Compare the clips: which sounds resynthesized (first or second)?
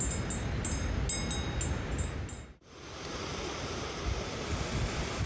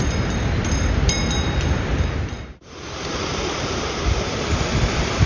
second